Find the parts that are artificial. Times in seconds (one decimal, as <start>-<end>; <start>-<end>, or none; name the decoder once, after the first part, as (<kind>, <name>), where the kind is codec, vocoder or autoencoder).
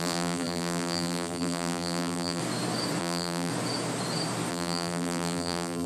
0.0-2.4 (vocoder, BigVGAN v2); 3.0-3.5; 4.5-5.9